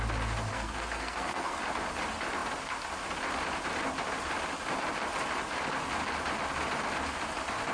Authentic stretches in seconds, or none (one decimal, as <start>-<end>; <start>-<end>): 0.0-0.5; 1.6-7.7